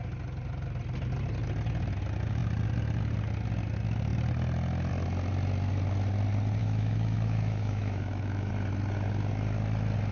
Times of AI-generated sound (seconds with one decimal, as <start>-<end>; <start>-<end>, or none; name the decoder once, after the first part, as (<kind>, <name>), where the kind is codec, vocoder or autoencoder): 6.6-8.5 (autoencoder, DAC-VAE)